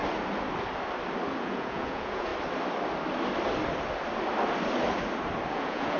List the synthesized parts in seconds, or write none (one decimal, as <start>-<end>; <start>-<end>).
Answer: 1.4-2.3; 5.5-6.0